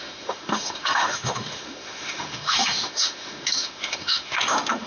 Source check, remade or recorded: remade